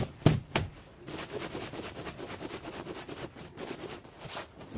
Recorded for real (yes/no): yes